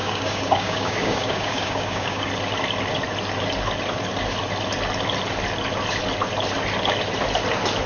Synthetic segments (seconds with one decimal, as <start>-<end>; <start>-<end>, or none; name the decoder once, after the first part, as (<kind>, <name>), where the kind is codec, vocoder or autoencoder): 0.0-2.3 (codec, DAC)